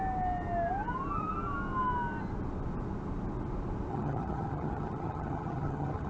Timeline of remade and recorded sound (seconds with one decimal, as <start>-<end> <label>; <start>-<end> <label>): 0.0-3.9 recorded; 3.9-6.1 remade